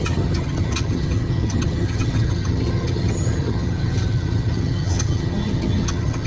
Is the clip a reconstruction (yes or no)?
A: yes